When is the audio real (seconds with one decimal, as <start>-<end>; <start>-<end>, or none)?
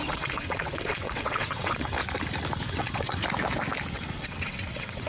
2.0-2.7; 3.2-3.9